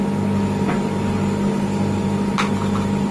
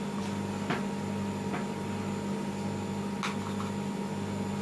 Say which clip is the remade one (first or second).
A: first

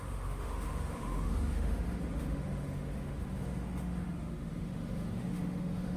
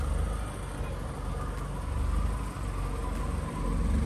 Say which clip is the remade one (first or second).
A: first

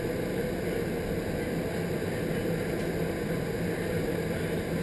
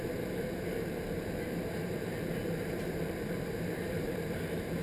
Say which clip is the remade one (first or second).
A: second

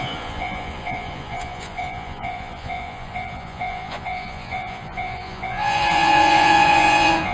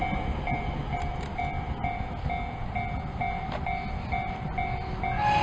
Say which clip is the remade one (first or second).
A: first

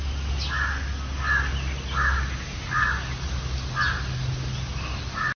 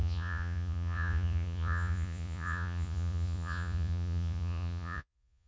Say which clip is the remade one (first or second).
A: second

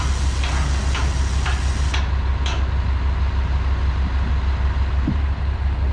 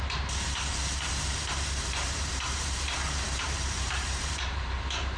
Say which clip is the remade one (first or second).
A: second